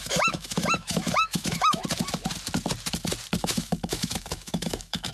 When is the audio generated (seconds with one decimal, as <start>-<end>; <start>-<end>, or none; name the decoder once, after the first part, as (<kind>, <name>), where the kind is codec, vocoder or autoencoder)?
0.0-1.8 (autoencoder, DAC-VAE); 3.4-5.1